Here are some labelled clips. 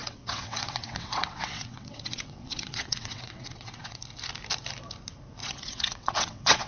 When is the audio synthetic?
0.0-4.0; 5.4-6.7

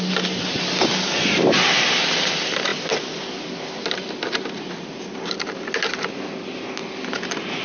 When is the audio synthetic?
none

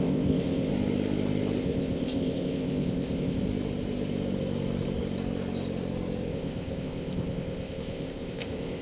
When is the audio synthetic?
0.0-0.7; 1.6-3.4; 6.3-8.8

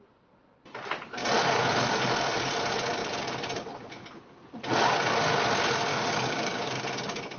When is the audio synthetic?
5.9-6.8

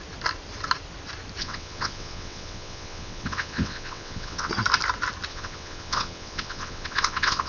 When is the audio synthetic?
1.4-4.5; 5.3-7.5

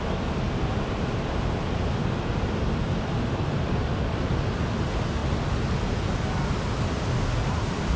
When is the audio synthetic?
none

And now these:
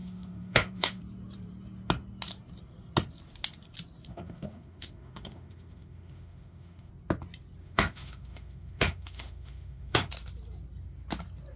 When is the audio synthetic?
0.0-1.0; 4.1-6.9; 7.6-10.1

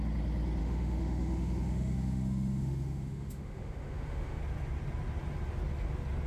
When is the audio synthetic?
0.6-4.4